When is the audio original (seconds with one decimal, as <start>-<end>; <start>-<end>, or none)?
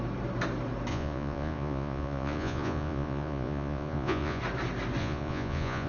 0.0-0.9; 4.4-5.0